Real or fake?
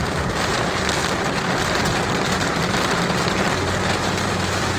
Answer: fake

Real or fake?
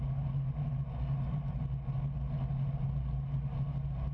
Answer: real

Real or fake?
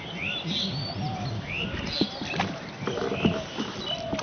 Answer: real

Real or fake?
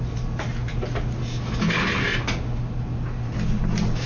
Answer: real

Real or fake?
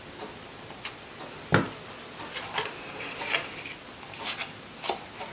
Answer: real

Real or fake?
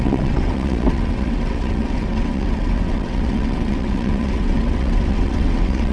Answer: fake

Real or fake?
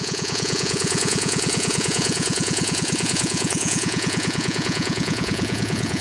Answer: fake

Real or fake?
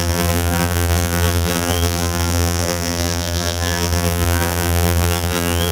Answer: fake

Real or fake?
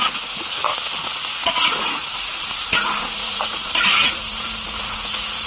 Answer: fake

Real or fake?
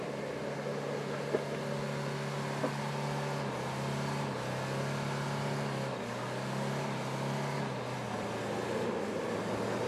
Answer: real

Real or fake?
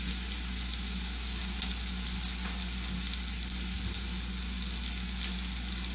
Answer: real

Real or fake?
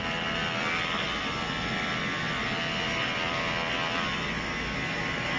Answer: real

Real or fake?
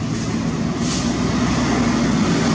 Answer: real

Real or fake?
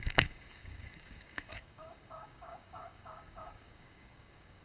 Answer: fake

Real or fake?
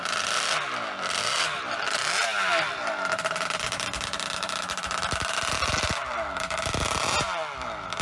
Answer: fake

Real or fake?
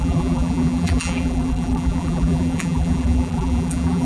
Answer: fake